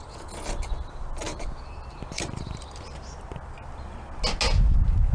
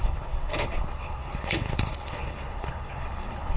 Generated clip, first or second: second